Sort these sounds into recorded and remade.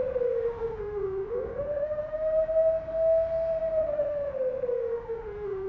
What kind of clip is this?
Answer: remade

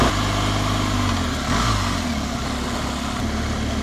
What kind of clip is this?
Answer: recorded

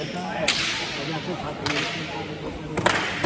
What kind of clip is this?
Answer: recorded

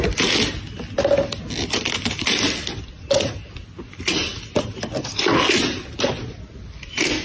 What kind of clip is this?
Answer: recorded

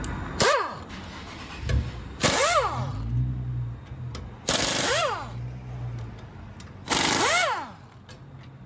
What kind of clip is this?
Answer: recorded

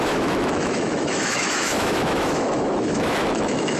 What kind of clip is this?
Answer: remade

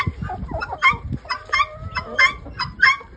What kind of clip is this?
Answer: recorded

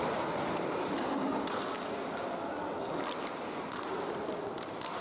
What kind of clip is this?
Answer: recorded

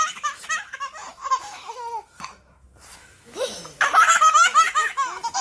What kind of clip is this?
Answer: remade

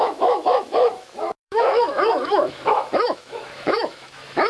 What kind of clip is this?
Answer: remade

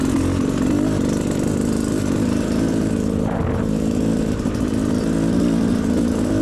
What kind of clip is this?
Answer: recorded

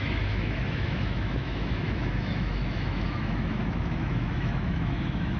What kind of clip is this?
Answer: remade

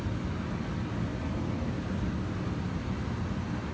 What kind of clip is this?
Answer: recorded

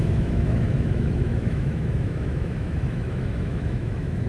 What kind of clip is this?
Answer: remade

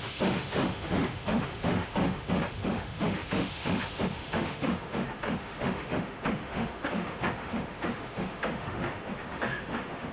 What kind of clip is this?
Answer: remade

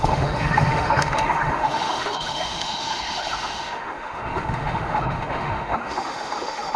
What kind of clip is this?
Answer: remade